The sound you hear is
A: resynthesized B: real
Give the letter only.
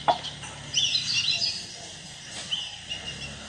B